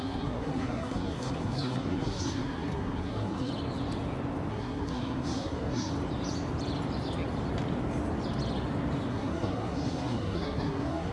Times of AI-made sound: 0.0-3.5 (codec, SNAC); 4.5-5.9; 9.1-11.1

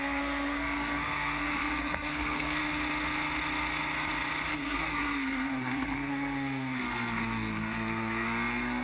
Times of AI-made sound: 0.0-2.6 (codec, SNAC); 4.5-8.8

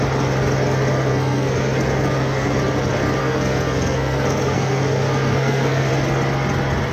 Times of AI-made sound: 1.1-2.6 (codec, SNAC); 3.2-5.9

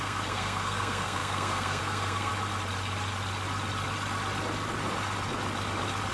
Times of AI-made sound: 0.0-2.3 (codec, SNAC)